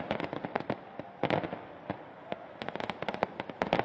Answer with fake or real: real